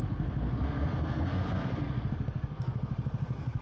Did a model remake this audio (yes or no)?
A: yes